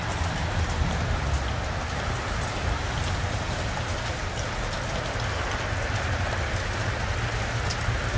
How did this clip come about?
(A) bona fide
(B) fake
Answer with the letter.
A